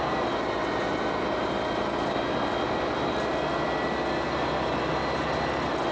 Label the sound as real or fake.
real